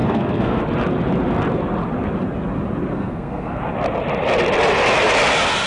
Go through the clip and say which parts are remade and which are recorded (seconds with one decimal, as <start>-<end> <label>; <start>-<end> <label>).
0.0-0.6 remade; 0.6-2.9 recorded; 2.9-3.6 remade; 3.6-5.7 recorded